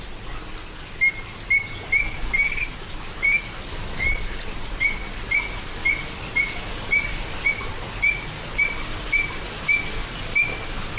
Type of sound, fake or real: real